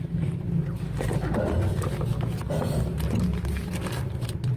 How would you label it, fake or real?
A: real